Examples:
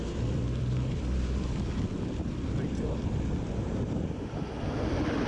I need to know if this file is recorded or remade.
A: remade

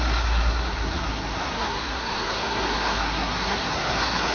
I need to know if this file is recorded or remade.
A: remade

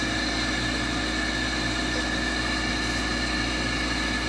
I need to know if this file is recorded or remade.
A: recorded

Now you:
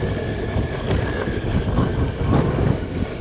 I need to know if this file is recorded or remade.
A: remade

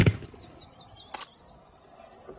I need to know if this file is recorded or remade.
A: recorded